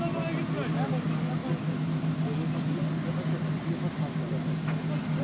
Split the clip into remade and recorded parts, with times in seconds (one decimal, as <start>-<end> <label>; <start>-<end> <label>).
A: 0.0-5.2 recorded